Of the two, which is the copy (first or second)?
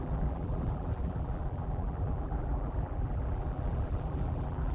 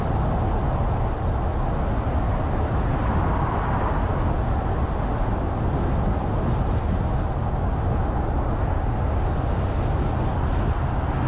first